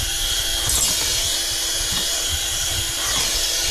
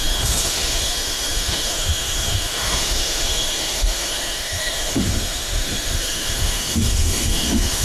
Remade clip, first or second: second